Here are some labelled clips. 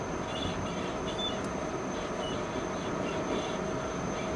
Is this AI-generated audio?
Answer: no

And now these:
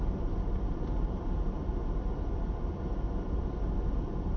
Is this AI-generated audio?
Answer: no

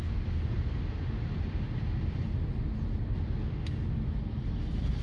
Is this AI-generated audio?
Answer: no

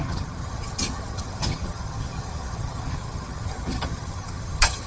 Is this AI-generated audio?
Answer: yes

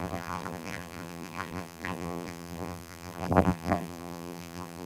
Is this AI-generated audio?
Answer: yes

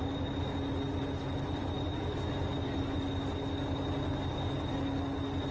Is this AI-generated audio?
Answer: no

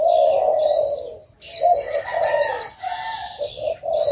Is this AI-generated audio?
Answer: no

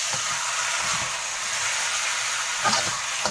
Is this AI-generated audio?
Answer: no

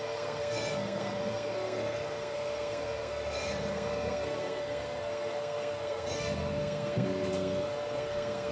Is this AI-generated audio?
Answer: yes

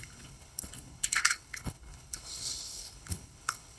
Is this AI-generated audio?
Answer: yes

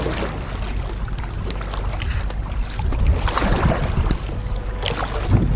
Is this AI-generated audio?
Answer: no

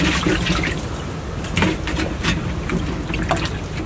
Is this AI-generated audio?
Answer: no